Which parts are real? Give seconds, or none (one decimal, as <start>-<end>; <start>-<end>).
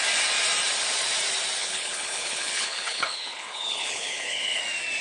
0.0-1.6; 4.6-5.0